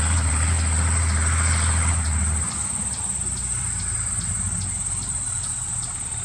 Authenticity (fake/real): real